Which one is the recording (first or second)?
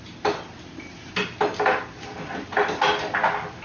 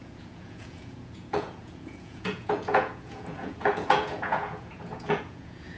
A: first